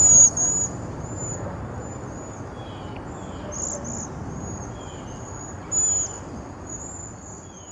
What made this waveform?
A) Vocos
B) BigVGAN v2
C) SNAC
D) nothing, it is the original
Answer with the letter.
D